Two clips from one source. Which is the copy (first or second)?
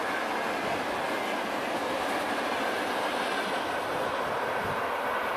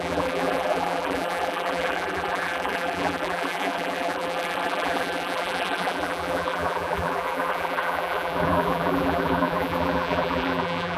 second